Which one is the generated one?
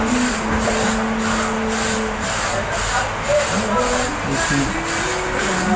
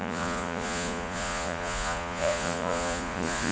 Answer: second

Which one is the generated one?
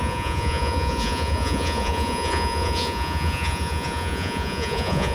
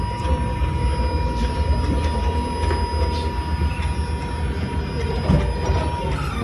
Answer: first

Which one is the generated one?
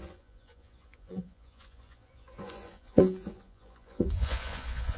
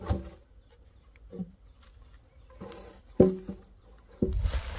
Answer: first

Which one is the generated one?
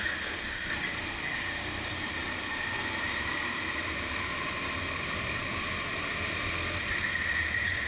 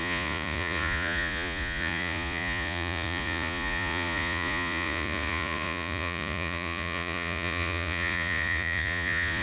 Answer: second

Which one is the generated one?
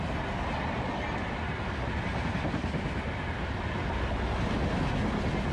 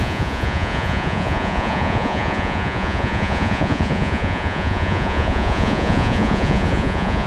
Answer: second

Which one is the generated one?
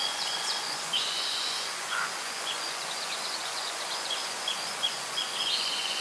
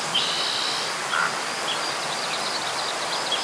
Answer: first